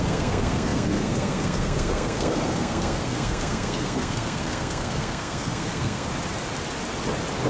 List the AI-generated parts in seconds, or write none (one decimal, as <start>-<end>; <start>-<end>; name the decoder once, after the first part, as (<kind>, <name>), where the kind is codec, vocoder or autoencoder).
0.0-6.1 (codec, SNAC)